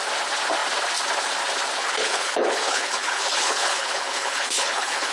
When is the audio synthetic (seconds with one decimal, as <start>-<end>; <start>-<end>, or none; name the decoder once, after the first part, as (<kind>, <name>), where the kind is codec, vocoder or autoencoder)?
1.8-5.1 (codec, HILCodec)